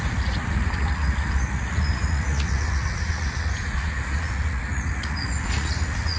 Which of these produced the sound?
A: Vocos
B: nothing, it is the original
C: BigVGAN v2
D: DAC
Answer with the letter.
A